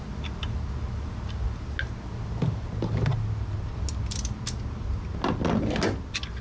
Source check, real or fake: real